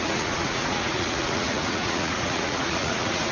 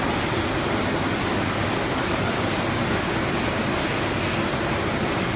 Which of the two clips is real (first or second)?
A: second